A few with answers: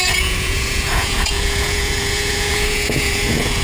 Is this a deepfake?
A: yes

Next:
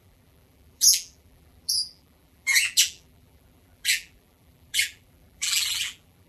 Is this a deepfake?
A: yes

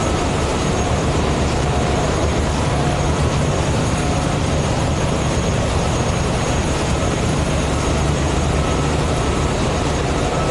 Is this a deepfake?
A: yes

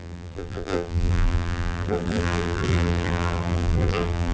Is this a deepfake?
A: yes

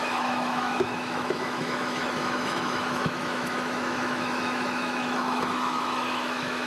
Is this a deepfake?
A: yes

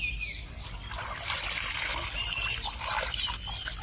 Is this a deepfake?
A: yes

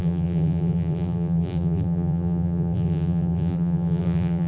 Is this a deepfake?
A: yes